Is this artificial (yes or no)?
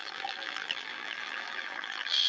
yes